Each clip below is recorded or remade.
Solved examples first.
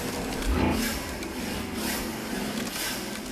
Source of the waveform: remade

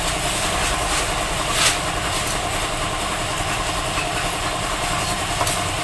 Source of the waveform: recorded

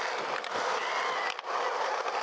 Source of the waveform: recorded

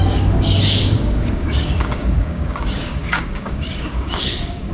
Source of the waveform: remade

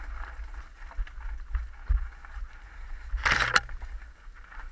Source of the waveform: recorded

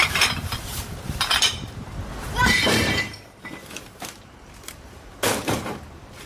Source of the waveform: remade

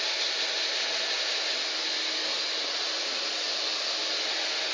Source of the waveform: recorded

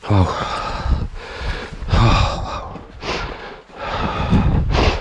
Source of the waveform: recorded